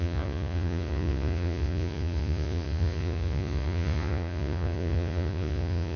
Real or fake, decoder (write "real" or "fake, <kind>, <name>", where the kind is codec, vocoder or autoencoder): fake, vocoder, Vocos